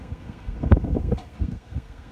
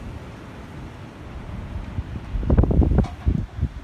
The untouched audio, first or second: second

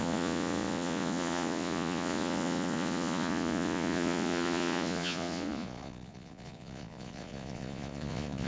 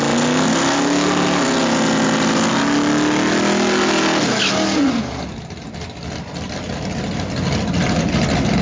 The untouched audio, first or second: second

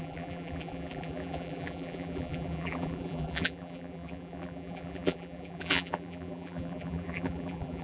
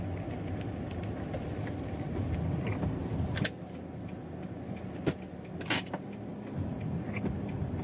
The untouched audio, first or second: second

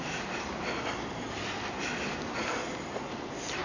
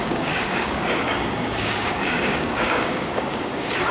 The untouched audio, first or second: first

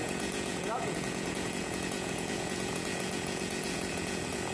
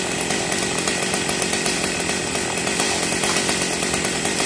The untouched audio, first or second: second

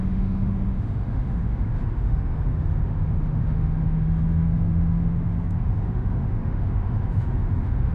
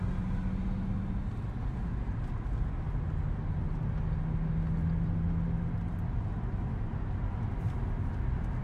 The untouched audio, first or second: second